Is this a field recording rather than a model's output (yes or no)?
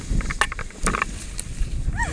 yes